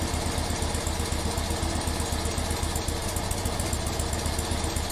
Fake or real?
real